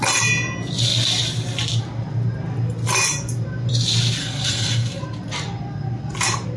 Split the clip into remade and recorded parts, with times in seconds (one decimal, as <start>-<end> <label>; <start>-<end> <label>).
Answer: 0.0-4.2 recorded; 4.2-5.0 remade; 5.0-6.6 recorded